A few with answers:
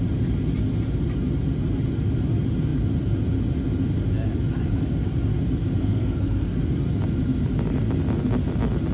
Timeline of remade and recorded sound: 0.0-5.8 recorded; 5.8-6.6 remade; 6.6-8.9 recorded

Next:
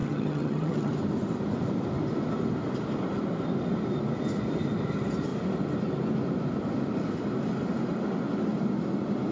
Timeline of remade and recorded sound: 0.0-0.9 remade; 0.9-9.3 recorded

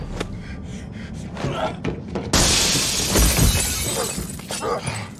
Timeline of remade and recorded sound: 0.0-5.2 recorded